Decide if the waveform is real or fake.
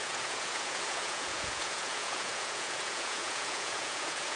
fake